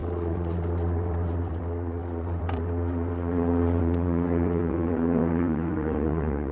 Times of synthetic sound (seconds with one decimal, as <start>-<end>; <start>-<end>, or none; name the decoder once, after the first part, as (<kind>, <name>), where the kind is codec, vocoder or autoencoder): 0.0-6.5 (vocoder, WaveNeXt)